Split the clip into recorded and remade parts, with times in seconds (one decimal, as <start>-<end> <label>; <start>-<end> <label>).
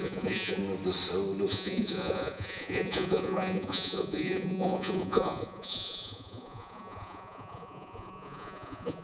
0.0-0.6 remade; 0.6-1.5 recorded; 1.5-9.0 remade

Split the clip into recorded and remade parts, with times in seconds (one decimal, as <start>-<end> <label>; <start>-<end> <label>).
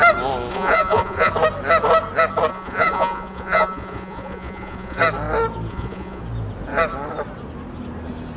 0.0-0.5 recorded; 0.5-1.3 remade; 1.3-2.5 recorded; 2.5-5.0 remade; 5.0-5.7 recorded; 5.7-6.2 remade; 6.2-8.4 recorded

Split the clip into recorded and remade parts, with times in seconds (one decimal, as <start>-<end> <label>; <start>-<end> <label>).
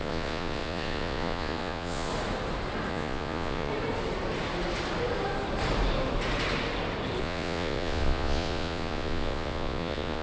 0.0-2.1 remade; 2.1-2.9 recorded; 2.9-3.7 remade; 3.7-7.2 recorded; 7.2-10.2 remade